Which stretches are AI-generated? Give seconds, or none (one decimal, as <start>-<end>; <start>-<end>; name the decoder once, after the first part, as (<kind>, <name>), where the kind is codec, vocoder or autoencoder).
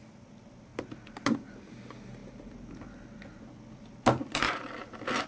none